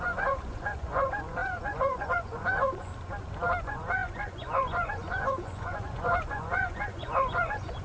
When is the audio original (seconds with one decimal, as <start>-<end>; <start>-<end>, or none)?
2.9-3.6